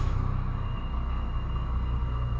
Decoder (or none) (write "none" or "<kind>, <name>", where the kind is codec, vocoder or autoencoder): codec, SNAC